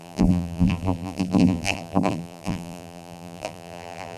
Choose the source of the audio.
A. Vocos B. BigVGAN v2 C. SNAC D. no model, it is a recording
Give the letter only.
B